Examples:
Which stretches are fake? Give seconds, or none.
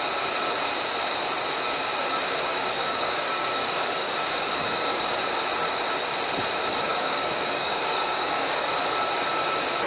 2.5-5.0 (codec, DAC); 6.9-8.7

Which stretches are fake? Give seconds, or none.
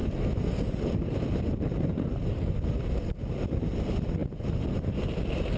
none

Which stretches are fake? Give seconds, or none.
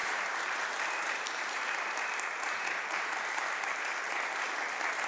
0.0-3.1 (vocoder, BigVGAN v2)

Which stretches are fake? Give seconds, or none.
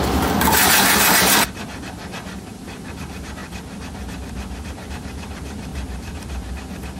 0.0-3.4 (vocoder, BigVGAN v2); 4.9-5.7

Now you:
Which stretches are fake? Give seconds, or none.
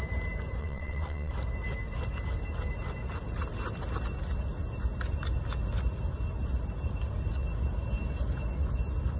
0.6-1.3 (vocoder, WaveNeXt)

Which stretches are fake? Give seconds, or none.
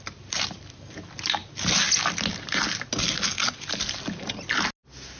none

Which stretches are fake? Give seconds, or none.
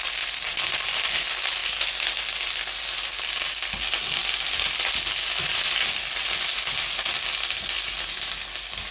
none